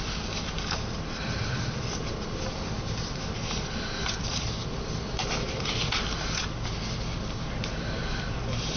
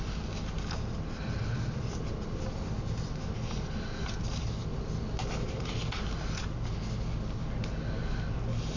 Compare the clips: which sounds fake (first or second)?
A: first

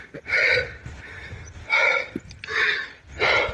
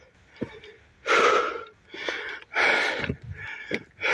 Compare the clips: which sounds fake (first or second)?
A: first